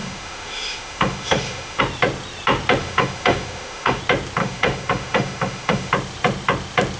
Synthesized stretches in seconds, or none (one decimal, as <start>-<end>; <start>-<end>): 0.0-1.8; 2.8-4.0; 4.4-5.9